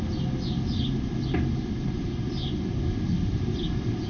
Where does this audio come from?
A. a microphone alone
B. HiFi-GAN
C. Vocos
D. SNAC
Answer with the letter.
A